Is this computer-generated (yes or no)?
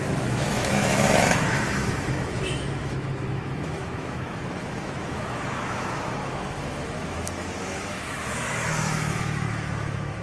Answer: yes